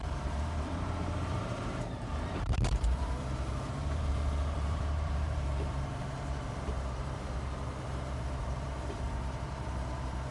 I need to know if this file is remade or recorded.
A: remade